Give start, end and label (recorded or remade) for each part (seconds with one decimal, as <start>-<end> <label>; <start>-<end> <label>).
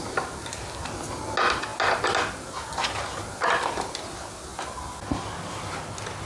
0.0-6.3 recorded